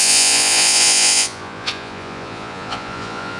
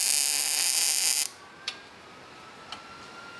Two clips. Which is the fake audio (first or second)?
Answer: first